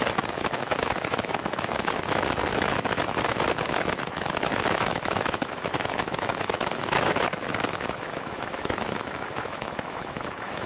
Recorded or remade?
remade